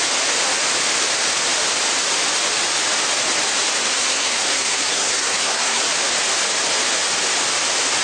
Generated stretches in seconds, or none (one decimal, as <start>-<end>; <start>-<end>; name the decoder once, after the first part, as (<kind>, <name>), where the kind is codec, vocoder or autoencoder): 3.9-5.8 (codec, SNAC)